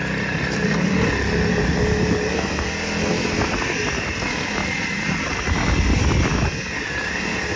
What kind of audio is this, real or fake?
real